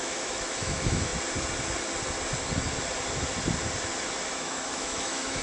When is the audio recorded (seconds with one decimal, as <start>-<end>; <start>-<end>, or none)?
1.1-4.3